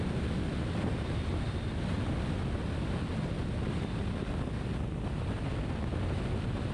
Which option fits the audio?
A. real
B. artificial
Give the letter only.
A